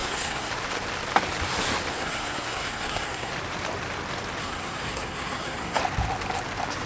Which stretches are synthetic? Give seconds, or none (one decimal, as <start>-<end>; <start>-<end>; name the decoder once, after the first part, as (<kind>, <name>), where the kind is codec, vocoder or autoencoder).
0.0-0.5 (codec, SNAC); 1.9-3.3; 4.4-5.8